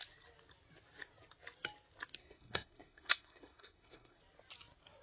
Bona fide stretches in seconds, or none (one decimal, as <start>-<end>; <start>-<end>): 0.0-2.2; 4.2-5.0